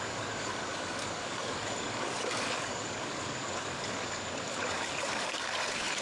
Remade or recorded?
remade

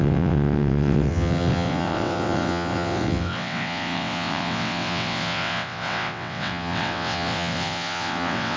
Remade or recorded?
remade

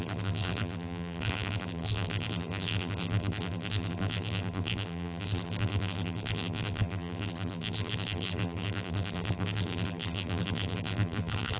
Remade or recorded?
remade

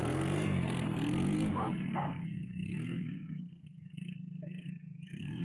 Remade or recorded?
remade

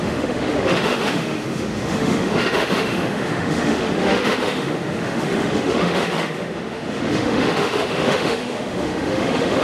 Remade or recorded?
remade